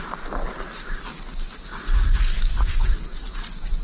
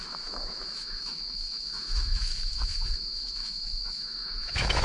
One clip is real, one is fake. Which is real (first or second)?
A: first